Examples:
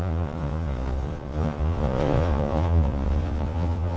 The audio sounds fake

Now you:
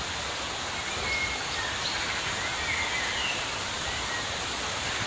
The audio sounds real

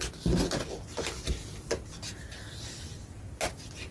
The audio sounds real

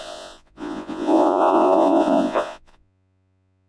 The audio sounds fake